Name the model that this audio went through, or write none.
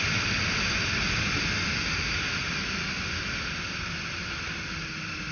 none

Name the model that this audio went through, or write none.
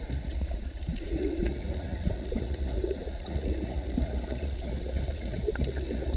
vocoder, Vocos